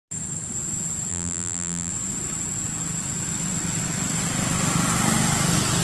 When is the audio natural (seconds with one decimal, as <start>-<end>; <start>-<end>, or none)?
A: 0.0-1.1; 1.9-5.8